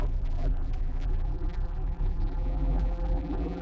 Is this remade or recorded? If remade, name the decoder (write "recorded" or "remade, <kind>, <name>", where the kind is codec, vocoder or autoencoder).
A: remade, vocoder, BigVGAN v2